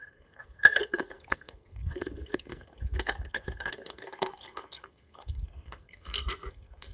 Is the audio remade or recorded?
remade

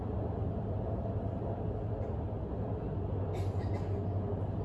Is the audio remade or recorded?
recorded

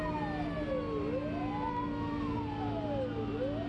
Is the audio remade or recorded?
recorded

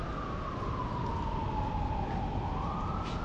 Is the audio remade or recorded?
recorded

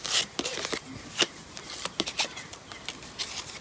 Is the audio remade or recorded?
recorded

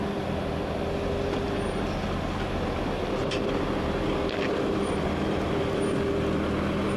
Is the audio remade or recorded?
recorded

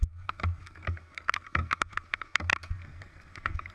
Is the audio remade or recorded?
remade